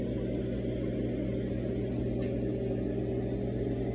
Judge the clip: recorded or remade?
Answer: recorded